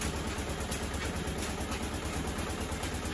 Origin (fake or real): real